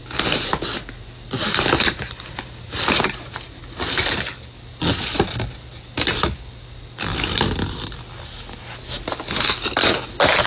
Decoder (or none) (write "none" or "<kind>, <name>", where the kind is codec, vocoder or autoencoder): none